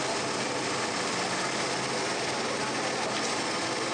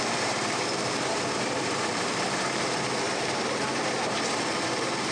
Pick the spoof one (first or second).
second